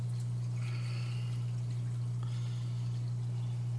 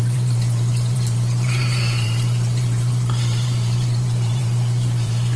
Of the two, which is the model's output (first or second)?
second